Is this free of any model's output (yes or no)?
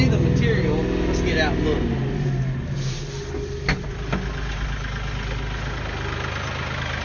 yes